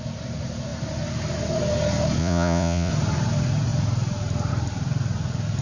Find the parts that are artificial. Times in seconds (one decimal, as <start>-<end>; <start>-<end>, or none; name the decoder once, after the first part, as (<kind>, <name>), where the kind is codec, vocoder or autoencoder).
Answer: 2.2-2.9 (vocoder, Vocos)